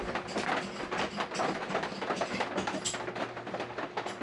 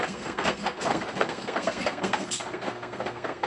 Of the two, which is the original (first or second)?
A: first